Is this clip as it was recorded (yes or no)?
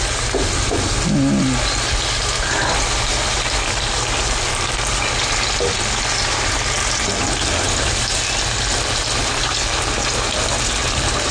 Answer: yes